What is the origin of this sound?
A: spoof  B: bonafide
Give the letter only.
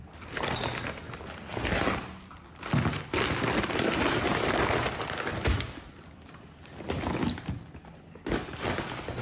B